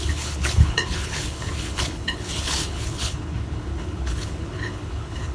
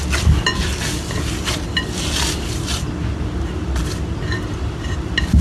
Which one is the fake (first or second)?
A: first